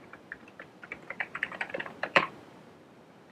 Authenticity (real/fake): fake